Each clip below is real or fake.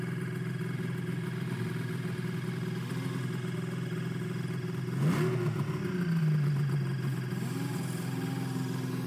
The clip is real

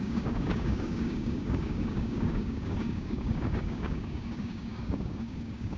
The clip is fake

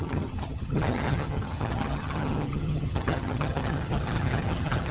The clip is fake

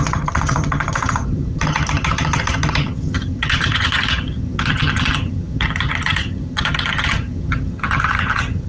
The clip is fake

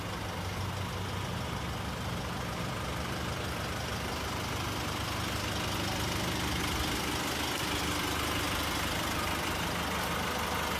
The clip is real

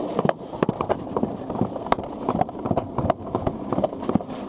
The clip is fake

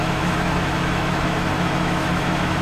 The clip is fake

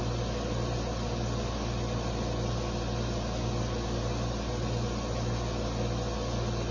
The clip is real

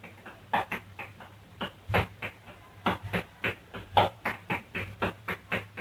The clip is fake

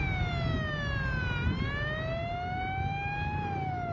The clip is real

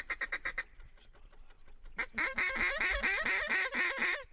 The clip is fake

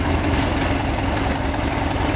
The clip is real